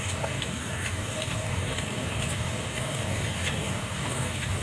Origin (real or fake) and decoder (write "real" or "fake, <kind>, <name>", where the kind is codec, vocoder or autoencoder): fake, codec, DAC